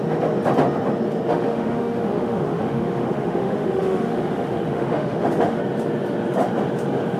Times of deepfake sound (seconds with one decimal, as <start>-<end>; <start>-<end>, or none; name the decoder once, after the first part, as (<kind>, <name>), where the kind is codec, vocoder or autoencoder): 1.3-5.6 (autoencoder, DAC-VAE)